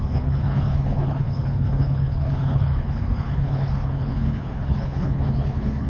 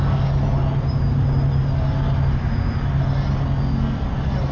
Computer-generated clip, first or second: first